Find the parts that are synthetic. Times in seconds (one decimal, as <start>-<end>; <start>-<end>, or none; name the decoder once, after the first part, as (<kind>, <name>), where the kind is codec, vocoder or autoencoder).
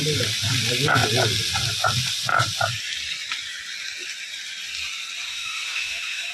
5.3-6.3 (autoencoder, DAC-VAE)